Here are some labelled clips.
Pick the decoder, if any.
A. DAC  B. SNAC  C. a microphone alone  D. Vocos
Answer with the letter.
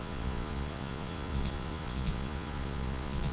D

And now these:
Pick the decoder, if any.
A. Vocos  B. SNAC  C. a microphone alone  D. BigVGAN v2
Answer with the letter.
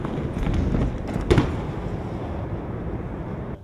C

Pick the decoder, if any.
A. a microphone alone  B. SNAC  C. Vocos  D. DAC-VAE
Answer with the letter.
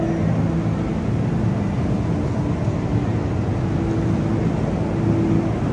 A